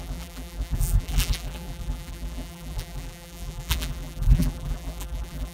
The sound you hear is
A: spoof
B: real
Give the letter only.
A